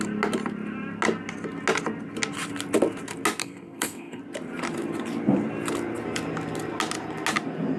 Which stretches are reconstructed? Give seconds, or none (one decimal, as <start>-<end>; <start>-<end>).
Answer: 3.4-4.2